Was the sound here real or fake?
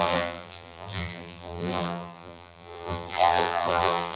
fake